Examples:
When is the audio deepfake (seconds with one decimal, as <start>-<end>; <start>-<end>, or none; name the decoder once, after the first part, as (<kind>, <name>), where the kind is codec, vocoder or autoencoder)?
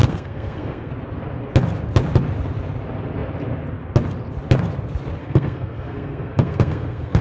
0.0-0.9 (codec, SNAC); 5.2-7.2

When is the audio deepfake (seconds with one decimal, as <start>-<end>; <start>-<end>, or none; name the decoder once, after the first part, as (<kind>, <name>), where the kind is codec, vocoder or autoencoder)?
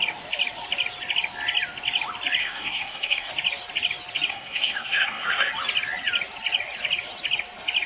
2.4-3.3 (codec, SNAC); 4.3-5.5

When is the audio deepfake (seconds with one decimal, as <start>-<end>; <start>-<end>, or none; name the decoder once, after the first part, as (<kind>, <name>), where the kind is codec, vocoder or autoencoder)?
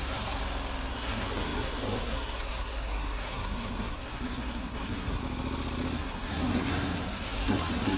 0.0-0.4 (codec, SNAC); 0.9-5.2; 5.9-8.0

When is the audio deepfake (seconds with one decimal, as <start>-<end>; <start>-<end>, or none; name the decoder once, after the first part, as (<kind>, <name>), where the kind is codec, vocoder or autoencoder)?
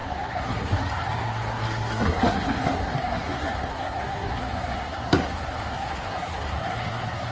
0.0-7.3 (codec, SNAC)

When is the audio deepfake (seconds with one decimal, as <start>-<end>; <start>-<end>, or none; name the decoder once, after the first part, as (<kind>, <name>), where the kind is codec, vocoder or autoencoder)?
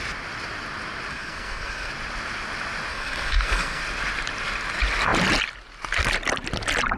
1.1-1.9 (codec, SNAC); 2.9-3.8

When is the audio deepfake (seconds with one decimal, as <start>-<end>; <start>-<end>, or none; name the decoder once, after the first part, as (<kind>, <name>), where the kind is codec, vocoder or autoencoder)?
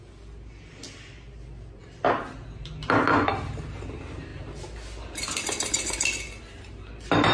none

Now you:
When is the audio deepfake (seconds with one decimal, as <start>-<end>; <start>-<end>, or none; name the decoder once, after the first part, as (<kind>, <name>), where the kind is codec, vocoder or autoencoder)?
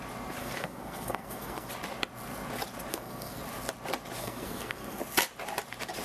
0.4-1.7 (codec, SNAC); 2.9-3.4; 4.2-5.0